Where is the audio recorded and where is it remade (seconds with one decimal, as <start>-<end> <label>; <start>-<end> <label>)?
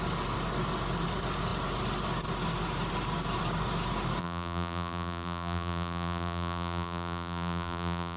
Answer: 0.0-4.2 recorded; 4.2-8.2 remade